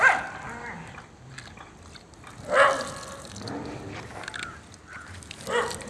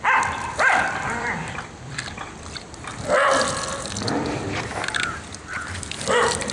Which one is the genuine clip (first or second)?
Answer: first